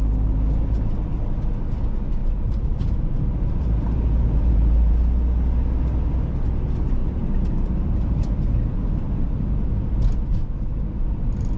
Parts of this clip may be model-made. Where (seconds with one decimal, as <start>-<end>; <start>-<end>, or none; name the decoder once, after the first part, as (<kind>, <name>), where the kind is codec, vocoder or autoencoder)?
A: 2.2-4.9 (vocoder, BigVGAN v2); 7.0-9.5

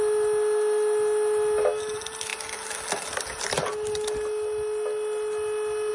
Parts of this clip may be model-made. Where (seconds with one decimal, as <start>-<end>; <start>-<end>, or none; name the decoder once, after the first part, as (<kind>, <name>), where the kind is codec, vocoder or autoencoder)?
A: none

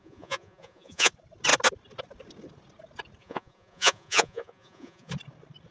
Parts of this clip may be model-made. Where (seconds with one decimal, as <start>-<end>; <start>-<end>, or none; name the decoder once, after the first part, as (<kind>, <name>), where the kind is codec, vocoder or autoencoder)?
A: 0.0-1.1 (vocoder, Vocos); 3.2-5.1

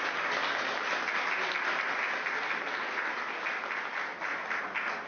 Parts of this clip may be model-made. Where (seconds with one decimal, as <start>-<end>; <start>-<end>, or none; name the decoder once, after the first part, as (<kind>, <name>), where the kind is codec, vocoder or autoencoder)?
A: none

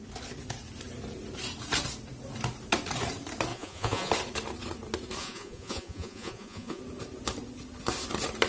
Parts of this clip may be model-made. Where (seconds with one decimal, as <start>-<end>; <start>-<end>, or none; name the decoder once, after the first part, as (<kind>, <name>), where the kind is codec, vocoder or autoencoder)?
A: 3.5-4.1 (vocoder, Vocos); 5.2-6.8

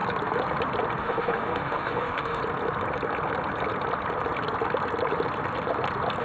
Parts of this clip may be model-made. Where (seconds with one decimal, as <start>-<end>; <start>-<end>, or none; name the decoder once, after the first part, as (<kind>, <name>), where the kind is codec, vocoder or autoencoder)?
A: 1.0-2.4 (autoencoder, DAC-VAE)

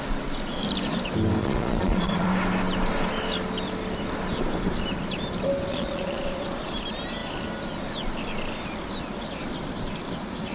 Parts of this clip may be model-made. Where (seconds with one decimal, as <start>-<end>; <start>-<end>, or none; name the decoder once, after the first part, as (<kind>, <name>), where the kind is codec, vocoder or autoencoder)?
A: 1.4-2.3 (vocoder, Vocos); 5.7-6.8

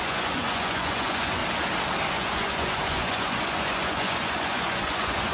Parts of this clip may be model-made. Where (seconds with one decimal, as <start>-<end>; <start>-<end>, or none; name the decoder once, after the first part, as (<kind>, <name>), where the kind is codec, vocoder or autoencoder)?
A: 0.0-1.4 (vocoder, Vocos); 2.1-5.3